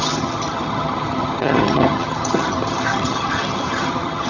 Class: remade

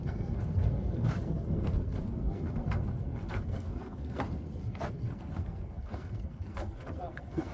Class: remade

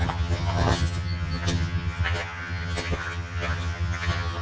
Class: remade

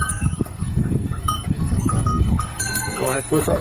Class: remade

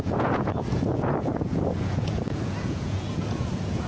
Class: remade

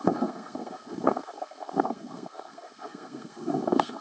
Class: remade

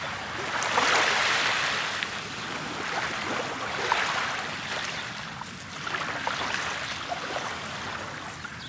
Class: recorded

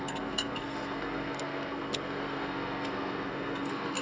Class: remade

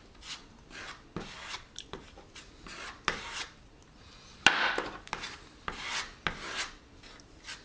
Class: recorded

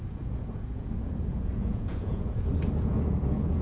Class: remade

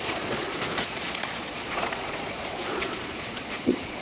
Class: remade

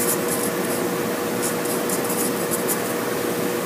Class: recorded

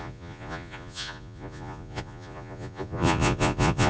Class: remade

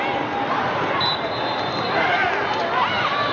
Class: recorded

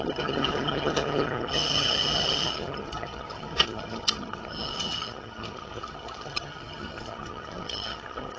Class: remade